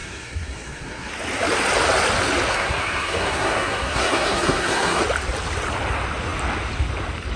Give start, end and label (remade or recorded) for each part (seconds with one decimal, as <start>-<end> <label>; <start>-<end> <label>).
0.0-1.1 remade; 1.1-2.5 recorded; 2.5-5.0 remade; 5.0-7.4 recorded